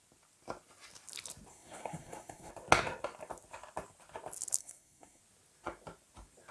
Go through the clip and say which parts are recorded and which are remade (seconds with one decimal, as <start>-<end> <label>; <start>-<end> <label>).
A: 0.0-1.5 recorded; 1.5-2.5 remade; 2.5-4.6 recorded; 4.6-5.2 remade; 5.2-6.5 recorded